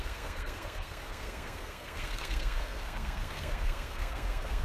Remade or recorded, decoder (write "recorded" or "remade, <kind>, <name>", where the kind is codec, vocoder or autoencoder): remade, codec, SNAC